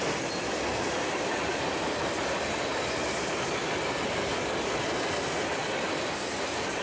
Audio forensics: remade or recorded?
recorded